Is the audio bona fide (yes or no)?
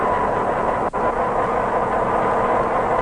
yes